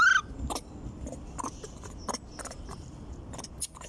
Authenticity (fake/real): fake